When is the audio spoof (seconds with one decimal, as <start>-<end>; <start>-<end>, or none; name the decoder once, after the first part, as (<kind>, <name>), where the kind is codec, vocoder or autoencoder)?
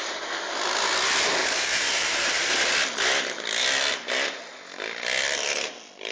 1.4-2.5 (vocoder, BigVGAN v2)